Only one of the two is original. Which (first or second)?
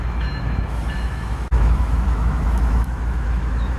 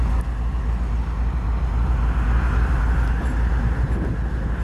second